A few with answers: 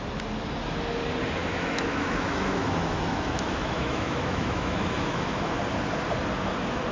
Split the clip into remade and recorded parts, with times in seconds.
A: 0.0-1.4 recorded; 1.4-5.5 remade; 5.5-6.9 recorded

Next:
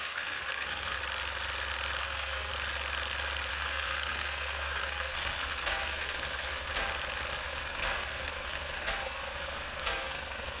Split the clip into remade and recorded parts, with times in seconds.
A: 0.0-1.0 remade; 1.0-2.0 recorded; 2.0-2.5 remade; 2.5-3.5 recorded; 3.5-6.7 remade; 6.7-7.4 recorded; 7.4-10.6 remade

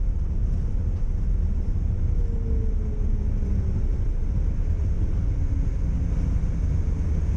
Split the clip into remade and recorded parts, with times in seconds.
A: 0.0-7.4 recorded

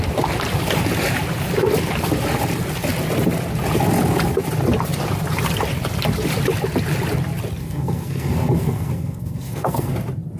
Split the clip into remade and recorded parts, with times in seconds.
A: 0.0-7.6 recorded; 7.6-9.9 remade; 9.9-10.4 recorded

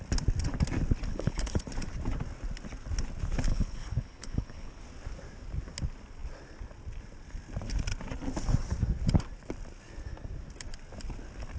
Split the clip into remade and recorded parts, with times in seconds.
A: 0.0-1.1 recorded; 1.1-1.7 remade; 1.7-3.5 recorded; 3.5-4.8 remade; 4.8-11.6 recorded

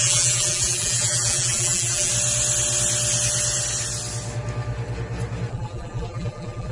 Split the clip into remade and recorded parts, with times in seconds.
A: 0.0-2.1 remade; 2.1-5.5 recorded; 5.5-6.7 remade